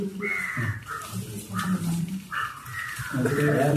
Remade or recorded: recorded